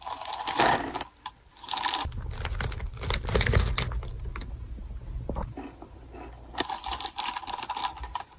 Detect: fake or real real